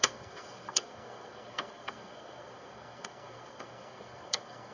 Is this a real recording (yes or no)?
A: no